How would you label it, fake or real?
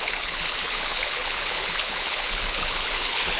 fake